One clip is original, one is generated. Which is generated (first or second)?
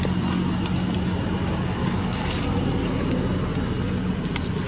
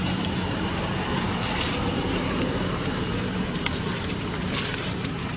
second